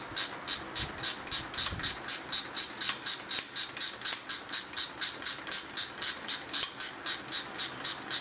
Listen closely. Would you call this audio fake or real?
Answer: real